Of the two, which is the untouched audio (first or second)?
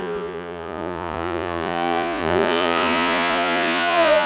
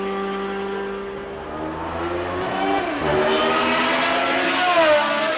second